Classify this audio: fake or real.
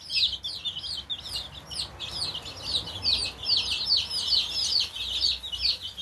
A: real